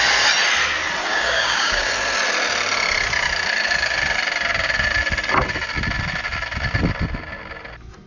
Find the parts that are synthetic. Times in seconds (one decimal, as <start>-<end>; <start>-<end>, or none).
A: 1.1-1.9